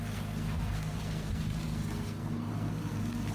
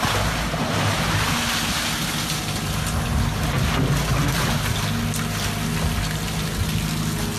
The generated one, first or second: first